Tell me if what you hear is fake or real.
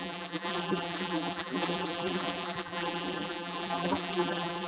fake